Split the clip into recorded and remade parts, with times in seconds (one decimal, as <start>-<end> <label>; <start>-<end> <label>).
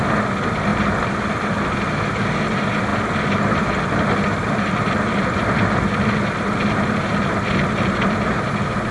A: 0.0-2.9 recorded; 2.9-7.9 remade; 7.9-8.9 recorded